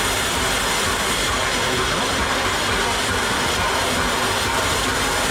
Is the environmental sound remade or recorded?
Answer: recorded